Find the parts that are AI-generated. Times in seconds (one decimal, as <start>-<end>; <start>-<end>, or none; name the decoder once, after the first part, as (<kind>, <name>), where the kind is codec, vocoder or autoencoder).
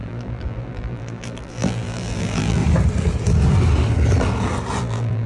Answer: 0.0-2.6 (vocoder, BigVGAN v2); 4.8-5.3